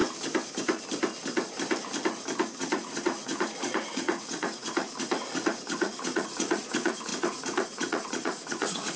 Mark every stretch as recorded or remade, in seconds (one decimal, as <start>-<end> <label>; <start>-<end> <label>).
0.0-2.6 recorded; 2.6-9.0 remade